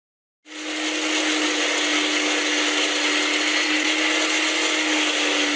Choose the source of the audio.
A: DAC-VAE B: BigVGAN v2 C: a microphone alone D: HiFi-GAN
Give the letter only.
C